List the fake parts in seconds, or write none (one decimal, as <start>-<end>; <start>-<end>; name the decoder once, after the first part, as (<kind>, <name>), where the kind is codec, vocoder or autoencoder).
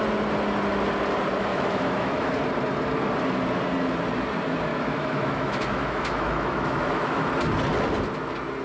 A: 1.5-2.3 (autoencoder, DAC-VAE); 4.7-7.3